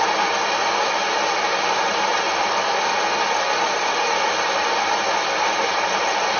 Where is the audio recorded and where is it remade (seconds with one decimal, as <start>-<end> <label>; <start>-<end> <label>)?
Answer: 0.0-6.4 recorded